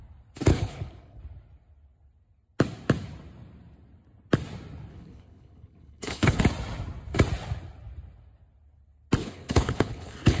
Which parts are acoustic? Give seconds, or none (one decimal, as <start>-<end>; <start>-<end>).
0.0-0.5; 1.2-4.9; 6.4-9.2